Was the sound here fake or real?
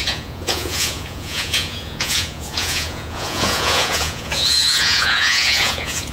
fake